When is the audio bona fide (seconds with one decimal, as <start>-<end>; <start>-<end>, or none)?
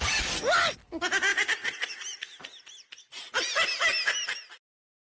0.0-5.0